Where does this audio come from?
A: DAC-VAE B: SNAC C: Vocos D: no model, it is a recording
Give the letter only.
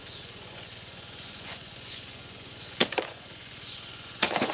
C